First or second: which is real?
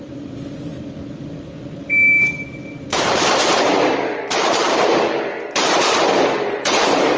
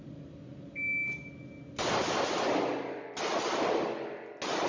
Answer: second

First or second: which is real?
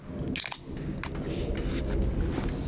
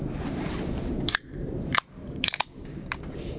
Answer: first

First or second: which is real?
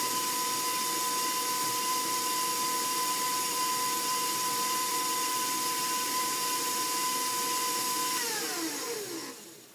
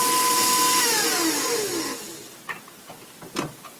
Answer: second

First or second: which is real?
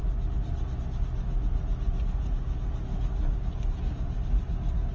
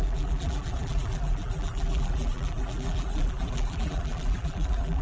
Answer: first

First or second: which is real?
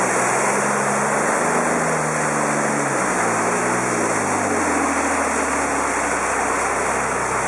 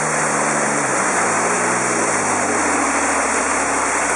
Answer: first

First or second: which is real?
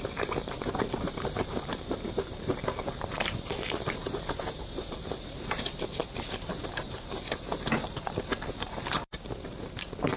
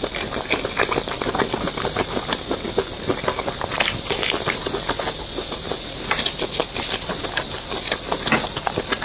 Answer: second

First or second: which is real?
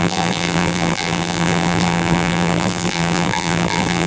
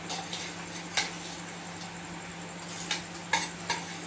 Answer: second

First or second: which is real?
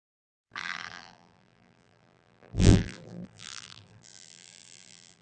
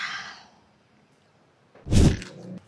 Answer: second